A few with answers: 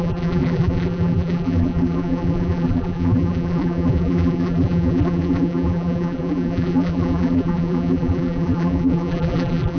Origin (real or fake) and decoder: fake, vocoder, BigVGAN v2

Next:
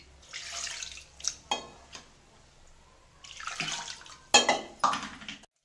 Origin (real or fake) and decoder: real